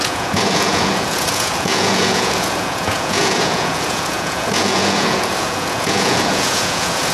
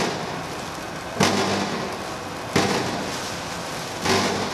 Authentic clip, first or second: second